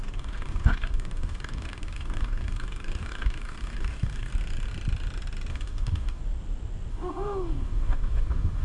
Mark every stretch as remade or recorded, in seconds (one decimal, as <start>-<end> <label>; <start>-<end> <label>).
0.0-4.3 remade; 4.3-5.5 recorded; 5.5-6.2 remade; 6.2-6.9 recorded; 6.9-8.6 remade